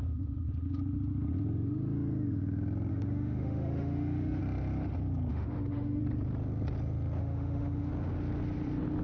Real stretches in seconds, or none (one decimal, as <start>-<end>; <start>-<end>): 0.0-2.9; 4.4-5.3; 6.0-7.2; 7.9-9.0